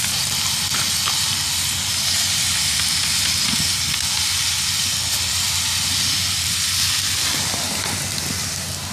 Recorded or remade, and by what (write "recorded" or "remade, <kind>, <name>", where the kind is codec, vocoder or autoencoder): recorded